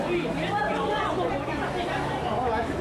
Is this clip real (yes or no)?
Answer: yes